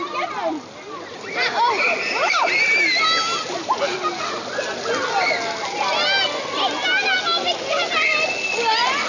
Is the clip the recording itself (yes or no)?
yes